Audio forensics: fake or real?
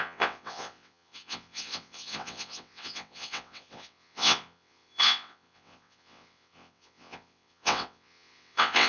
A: fake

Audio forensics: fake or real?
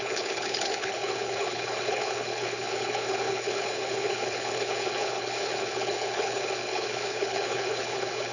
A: fake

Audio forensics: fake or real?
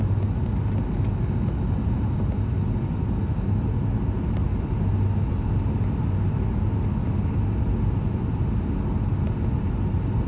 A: real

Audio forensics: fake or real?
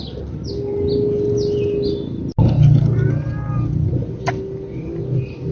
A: real